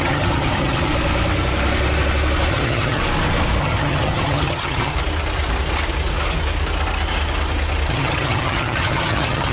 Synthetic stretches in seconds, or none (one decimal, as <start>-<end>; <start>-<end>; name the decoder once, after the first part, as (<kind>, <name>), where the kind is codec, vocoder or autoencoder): 0.0-0.9 (vocoder, HiFi-GAN); 2.5-3.0; 3.6-4.9; 7.9-9.5